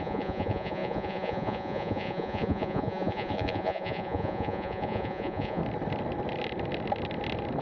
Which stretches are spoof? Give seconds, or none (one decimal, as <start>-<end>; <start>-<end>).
0.0-5.6